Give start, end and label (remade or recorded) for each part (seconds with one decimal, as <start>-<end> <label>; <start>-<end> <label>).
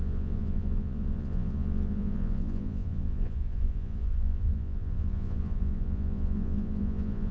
0.0-7.3 remade